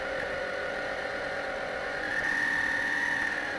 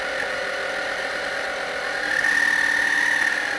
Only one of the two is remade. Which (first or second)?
first